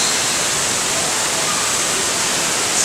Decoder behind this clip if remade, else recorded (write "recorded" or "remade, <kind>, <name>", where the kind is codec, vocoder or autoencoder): recorded